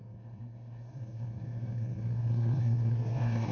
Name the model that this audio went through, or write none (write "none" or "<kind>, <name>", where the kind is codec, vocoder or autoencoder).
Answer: codec, SNAC